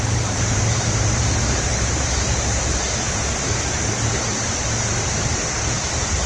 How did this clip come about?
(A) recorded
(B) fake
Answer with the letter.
B